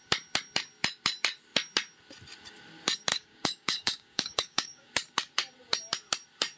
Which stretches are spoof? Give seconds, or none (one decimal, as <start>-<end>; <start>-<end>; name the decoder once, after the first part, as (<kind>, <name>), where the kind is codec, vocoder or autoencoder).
3.1-4.9 (codec, DAC)